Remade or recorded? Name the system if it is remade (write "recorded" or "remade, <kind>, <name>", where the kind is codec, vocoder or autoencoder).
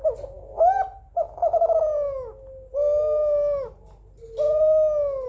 recorded